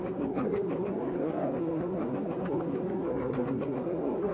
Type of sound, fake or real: fake